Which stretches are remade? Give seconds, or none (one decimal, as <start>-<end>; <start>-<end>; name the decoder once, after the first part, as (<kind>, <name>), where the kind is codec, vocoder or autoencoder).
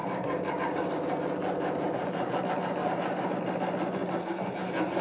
0.0-2.4 (codec, DAC); 2.8-3.4